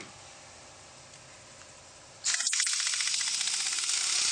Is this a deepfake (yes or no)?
no